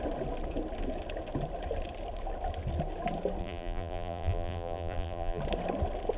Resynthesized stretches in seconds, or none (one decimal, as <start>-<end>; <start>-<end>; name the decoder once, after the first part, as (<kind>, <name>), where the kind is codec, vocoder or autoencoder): 3.4-5.4 (vocoder, BigVGAN v2)